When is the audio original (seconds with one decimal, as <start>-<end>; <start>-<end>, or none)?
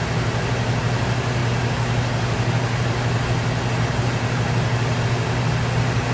0.0-6.1